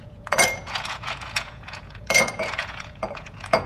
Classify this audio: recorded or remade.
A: remade